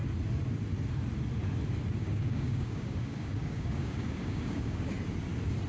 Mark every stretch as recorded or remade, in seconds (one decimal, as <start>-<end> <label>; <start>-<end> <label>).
0.0-2.0 recorded; 2.0-4.8 remade; 4.8-5.7 recorded

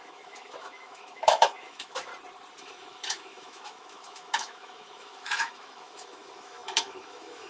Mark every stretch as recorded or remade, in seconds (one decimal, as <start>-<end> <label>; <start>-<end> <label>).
0.0-2.1 remade; 2.1-2.6 recorded; 2.6-7.5 remade

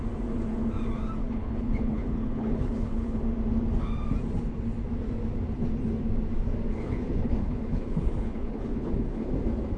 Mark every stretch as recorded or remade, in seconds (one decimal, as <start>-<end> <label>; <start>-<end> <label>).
0.0-1.2 recorded; 1.2-3.2 remade; 3.2-6.7 recorded; 6.7-9.3 remade; 9.3-9.8 recorded

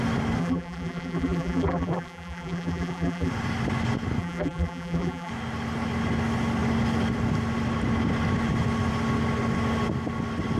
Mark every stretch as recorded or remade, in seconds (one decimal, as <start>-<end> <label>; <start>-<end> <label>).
0.0-0.4 recorded; 0.4-3.3 remade; 3.3-4.2 recorded; 4.2-5.3 remade; 5.3-10.6 recorded